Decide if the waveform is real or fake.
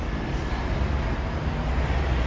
real